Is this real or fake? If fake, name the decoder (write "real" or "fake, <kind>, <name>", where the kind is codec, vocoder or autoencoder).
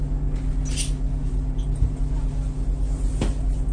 real